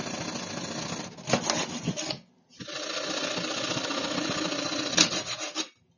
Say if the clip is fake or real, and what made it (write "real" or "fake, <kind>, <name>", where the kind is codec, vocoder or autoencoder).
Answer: real